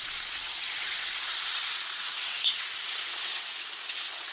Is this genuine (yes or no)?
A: no